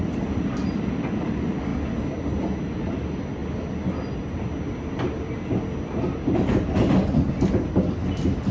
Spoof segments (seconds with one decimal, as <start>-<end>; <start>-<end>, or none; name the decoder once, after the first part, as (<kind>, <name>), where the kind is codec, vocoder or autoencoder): 0.0-1.7 (vocoder, BigVGAN v2); 2.6-3.4